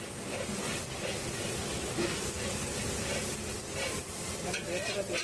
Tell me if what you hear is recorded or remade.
recorded